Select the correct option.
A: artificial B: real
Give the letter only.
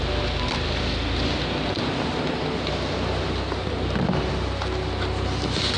B